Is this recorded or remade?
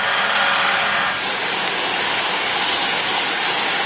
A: remade